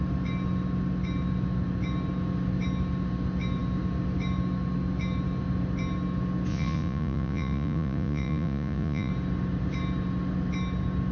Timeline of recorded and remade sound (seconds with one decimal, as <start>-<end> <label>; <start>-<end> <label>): 0.0-6.5 recorded; 6.5-9.1 remade; 9.1-11.1 recorded